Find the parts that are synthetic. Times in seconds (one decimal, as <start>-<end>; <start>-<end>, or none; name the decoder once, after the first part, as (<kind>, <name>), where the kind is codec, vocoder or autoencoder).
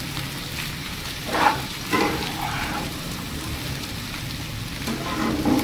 0.8-4.2 (vocoder, BigVGAN v2)